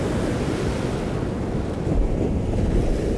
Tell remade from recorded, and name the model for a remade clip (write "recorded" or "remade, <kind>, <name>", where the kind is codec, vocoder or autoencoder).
recorded